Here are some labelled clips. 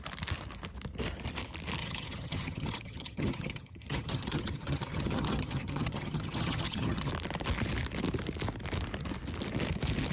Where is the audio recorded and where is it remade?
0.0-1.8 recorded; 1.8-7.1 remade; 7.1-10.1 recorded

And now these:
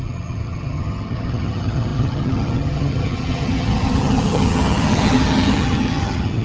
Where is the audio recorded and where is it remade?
0.0-6.4 remade